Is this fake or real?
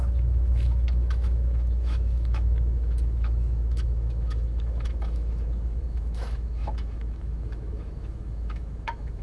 fake